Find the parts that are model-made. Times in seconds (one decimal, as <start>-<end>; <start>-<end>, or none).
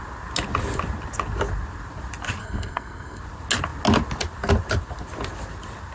2.4-3.2